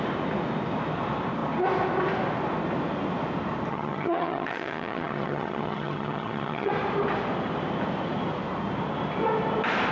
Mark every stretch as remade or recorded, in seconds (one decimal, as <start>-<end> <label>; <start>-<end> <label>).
0.0-3.7 recorded; 3.7-6.7 remade; 6.7-9.9 recorded